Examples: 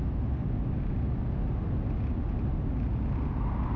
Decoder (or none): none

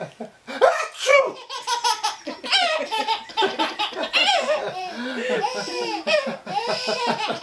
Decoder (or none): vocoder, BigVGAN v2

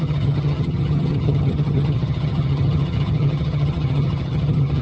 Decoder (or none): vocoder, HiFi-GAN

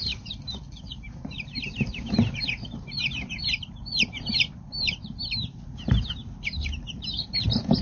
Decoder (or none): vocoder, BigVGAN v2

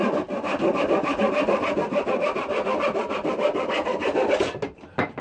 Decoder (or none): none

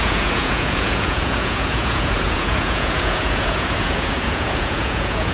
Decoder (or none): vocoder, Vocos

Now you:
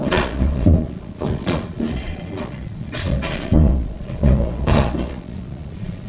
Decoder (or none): vocoder, Vocos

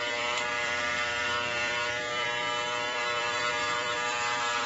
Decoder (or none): vocoder, BigVGAN v2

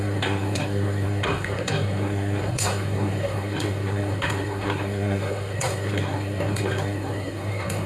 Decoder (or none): codec, SNAC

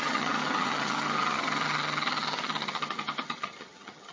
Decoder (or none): vocoder, HiFi-GAN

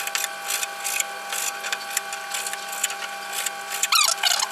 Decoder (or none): none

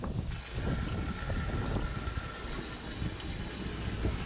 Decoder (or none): none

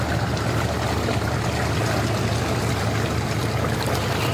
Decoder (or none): none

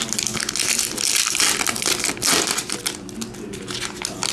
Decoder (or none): none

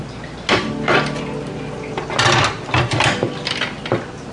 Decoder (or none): none